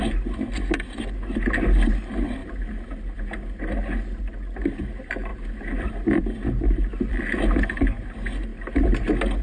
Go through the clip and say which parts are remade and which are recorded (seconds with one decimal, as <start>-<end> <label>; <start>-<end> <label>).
0.0-9.4 recorded